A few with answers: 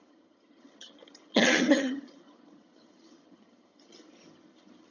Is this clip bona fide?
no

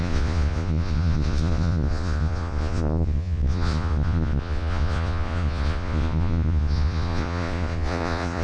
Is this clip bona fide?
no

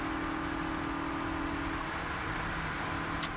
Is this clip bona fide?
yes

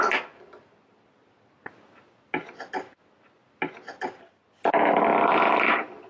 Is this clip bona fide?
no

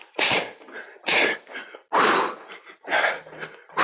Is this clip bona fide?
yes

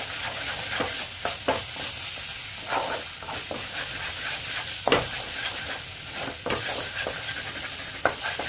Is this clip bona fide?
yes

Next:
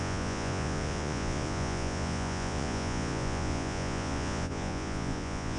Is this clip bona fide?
no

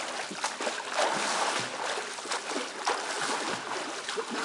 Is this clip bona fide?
yes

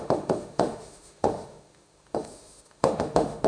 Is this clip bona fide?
no